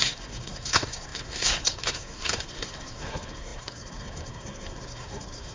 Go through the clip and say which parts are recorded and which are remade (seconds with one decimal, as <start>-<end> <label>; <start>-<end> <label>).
0.0-5.5 remade